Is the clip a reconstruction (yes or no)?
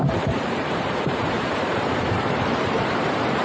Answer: yes